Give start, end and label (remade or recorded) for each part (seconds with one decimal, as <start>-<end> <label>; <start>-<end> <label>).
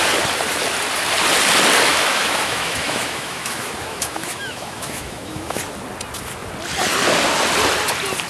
0.0-1.9 recorded; 1.9-5.6 remade; 5.6-8.3 recorded